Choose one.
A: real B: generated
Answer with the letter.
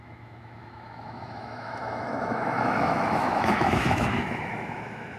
B